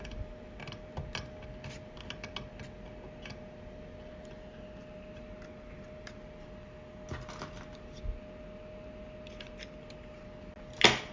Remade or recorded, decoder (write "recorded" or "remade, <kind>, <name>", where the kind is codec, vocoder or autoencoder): recorded